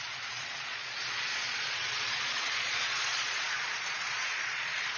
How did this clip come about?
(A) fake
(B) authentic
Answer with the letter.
A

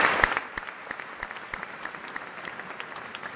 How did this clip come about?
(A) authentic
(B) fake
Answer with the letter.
A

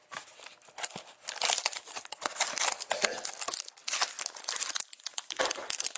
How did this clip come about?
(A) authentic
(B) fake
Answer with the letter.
A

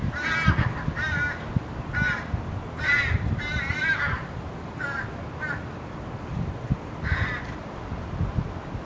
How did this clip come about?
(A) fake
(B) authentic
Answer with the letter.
B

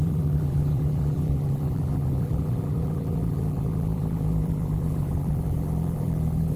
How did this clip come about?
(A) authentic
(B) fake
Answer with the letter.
B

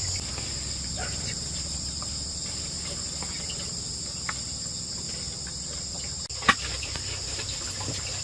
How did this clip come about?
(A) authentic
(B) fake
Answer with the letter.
A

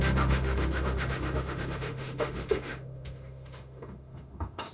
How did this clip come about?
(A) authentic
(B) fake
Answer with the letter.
B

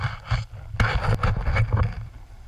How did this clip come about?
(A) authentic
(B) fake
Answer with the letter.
A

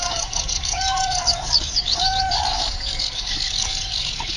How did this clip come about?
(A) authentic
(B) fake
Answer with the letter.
B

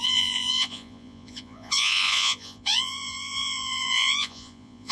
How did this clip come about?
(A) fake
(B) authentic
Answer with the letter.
A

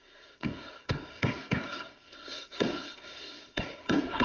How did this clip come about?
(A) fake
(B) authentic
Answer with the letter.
A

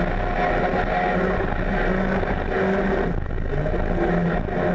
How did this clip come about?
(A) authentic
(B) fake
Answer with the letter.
A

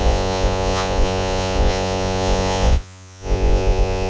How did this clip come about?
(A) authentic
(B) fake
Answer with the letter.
B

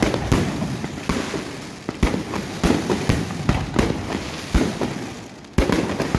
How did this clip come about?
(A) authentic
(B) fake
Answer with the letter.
A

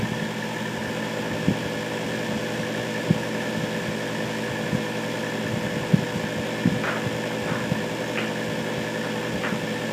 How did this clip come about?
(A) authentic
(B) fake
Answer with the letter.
A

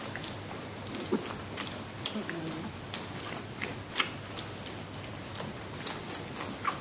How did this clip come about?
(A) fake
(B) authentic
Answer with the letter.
B